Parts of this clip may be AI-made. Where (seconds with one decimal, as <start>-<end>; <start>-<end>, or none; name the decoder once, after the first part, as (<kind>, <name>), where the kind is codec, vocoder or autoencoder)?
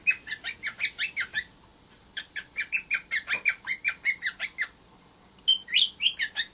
1.7-4.4 (vocoder, BigVGAN v2)